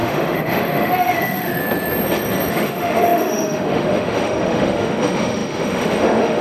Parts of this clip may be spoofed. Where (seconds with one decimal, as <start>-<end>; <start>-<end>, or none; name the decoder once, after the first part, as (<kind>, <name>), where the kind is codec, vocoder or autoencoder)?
0.0-1.6 (autoencoder, DAC-VAE); 2.5-6.4